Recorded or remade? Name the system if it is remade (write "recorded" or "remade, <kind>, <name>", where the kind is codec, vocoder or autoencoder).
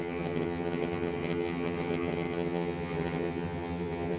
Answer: remade, vocoder, HiFi-GAN